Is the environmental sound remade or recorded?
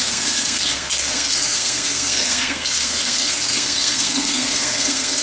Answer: remade